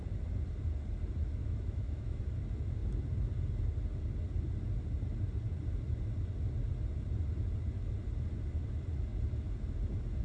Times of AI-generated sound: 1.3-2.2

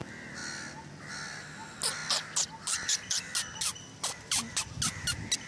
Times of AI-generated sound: none